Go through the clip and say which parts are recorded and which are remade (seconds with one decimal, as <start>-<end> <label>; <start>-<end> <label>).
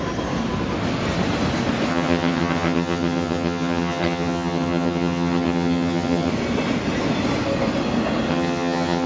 0.0-1.9 recorded; 1.9-6.3 remade; 6.3-8.3 recorded; 8.3-9.1 remade